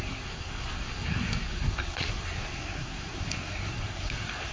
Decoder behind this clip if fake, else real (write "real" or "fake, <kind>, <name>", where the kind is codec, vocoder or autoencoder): fake, codec, SNAC